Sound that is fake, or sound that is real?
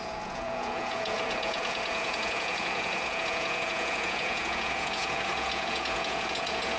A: fake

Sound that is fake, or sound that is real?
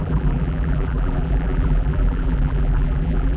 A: fake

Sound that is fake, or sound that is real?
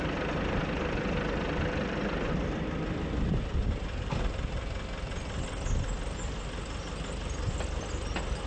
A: real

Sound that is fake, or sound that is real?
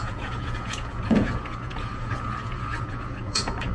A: fake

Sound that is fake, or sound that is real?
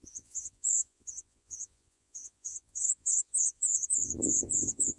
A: fake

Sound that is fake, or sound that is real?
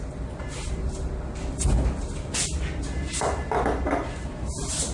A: real